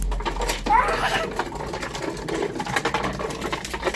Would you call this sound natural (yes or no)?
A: yes